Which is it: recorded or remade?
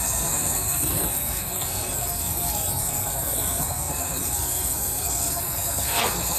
remade